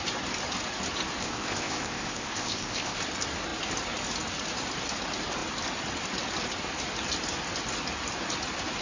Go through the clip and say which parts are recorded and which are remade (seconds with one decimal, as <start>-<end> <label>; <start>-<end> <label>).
0.0-1.2 recorded; 1.2-3.0 remade; 3.0-8.8 recorded